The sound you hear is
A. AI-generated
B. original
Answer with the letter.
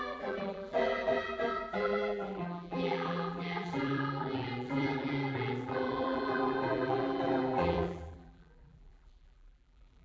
A